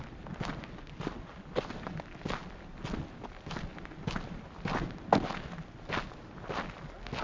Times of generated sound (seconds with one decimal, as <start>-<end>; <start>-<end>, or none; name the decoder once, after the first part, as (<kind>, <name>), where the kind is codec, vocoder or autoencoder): none